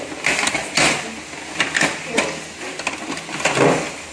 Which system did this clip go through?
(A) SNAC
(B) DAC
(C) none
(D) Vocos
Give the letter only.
C